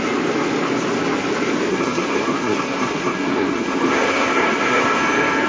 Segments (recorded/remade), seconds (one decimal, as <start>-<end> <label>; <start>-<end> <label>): 0.0-1.7 recorded; 1.7-5.0 remade; 5.0-5.5 recorded